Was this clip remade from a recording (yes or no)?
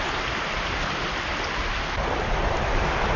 no